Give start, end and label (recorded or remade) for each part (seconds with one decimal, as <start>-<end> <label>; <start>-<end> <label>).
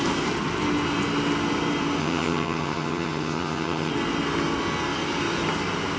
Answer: 0.0-2.0 recorded; 2.0-3.9 remade; 3.9-6.0 recorded